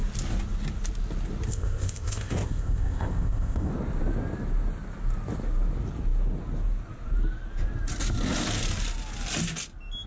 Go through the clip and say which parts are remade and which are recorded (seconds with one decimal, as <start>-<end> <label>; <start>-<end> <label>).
0.0-1.5 recorded; 1.5-3.7 remade; 3.7-10.1 recorded